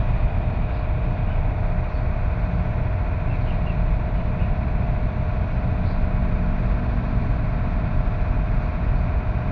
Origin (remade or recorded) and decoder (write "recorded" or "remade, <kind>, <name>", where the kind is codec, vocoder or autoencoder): recorded